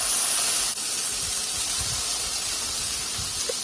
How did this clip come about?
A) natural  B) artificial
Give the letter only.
A